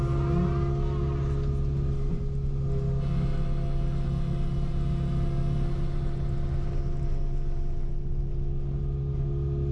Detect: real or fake real